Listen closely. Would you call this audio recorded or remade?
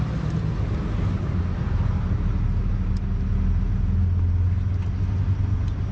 recorded